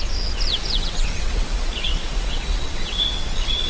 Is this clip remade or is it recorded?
remade